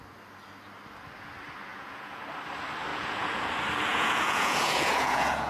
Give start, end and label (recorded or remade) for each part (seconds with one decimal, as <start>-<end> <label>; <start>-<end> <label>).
0.0-1.7 recorded; 1.7-2.2 remade; 2.2-2.9 recorded; 2.9-3.5 remade; 3.5-3.9 recorded; 3.9-5.5 remade